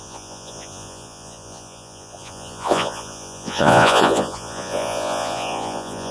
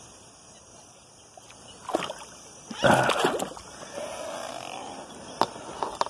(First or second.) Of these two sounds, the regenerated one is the first